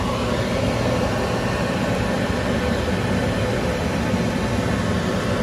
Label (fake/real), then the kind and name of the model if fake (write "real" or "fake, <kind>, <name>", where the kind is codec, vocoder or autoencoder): real